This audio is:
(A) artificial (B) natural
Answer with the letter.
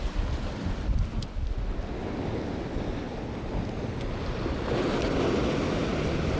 B